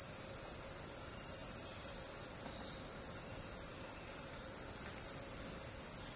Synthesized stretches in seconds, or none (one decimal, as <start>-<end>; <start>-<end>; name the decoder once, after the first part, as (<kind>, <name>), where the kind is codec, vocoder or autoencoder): none